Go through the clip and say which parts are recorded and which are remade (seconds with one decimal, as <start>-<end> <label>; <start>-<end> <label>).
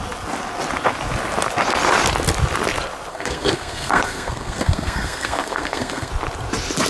0.0-3.1 recorded; 3.1-6.1 remade; 6.1-6.9 recorded